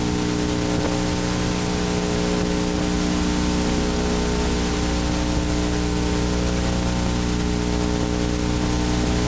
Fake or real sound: real